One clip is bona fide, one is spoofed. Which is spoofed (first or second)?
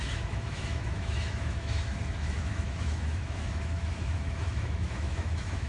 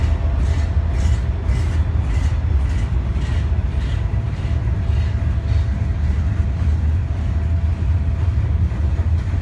first